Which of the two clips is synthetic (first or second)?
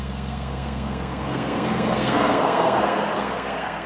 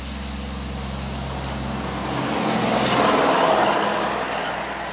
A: first